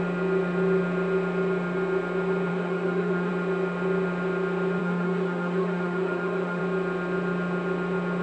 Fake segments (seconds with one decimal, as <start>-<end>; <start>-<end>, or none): 2.5-3.3; 4.8-6.6